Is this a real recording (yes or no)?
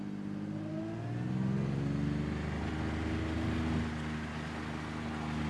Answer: yes